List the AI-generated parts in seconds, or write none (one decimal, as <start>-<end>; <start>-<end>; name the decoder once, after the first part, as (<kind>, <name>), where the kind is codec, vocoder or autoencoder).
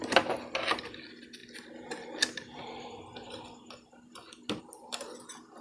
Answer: none